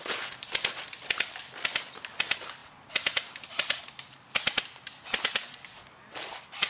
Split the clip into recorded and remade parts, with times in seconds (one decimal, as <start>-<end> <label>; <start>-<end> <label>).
0.0-6.7 recorded